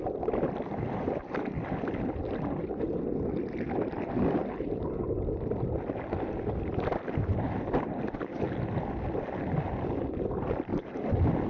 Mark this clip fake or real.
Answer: real